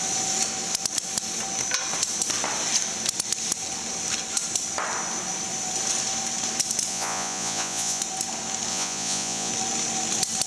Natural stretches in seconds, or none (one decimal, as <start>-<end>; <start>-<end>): 0.0-6.9; 8.0-8.7; 9.5-10.5